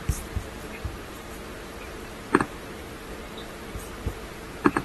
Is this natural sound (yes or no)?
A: no